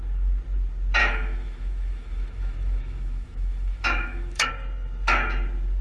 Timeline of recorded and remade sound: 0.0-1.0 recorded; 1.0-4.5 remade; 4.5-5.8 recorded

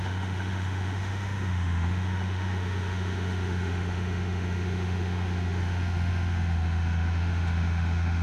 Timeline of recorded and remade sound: 0.0-8.2 remade

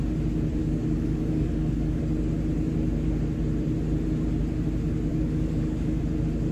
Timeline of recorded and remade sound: 0.0-0.6 recorded; 0.6-2.0 remade; 2.0-5.1 recorded; 5.1-6.0 remade; 6.0-6.5 recorded

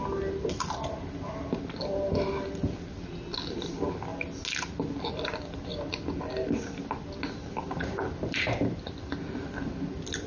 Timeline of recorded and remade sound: 0.0-10.3 recorded